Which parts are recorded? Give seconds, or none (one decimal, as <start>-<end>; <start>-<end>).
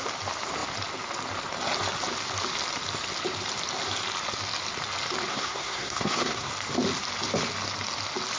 0.0-5.3; 6.5-8.4